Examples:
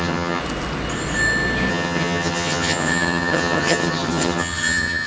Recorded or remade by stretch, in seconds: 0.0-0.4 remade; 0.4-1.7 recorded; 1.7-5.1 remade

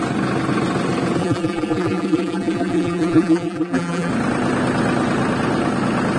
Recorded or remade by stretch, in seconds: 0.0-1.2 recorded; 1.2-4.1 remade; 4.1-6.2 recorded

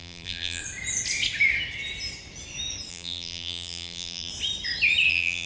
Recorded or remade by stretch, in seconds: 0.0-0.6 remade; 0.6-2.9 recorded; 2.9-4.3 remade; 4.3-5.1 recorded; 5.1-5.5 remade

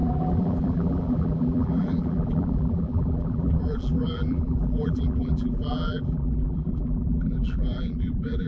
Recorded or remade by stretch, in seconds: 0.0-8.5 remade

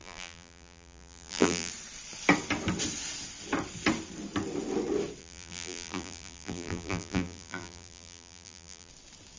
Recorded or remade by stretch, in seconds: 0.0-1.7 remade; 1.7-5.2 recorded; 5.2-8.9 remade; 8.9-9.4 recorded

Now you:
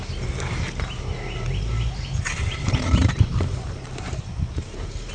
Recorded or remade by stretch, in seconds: 0.0-2.2 recorded; 2.2-5.1 remade